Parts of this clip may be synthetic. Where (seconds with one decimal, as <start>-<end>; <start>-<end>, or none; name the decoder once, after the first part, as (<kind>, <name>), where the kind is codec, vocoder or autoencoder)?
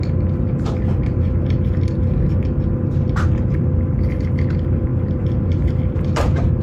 none